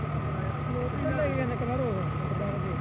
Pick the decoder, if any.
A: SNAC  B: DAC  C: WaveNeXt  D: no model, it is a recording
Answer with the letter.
D